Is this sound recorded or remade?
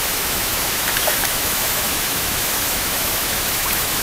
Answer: remade